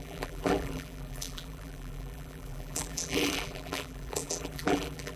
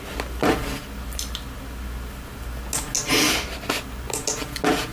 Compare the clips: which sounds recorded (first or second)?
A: second